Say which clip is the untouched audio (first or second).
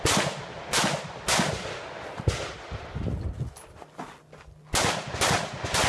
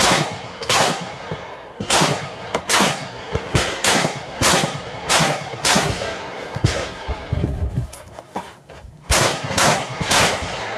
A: first